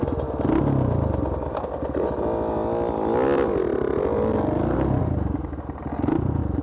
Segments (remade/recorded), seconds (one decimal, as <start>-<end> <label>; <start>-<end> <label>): 0.0-6.6 recorded